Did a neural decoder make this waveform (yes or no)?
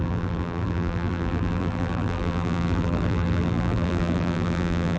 yes